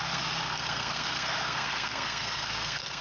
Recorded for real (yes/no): no